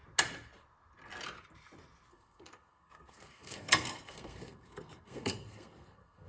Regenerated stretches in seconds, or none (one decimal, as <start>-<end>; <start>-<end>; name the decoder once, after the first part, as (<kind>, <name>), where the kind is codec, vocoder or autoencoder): 2.1-6.3 (codec, SNAC)